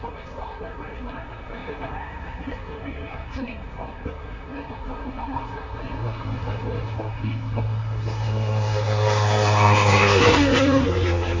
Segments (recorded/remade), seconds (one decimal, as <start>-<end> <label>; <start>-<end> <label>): 0.0-11.4 remade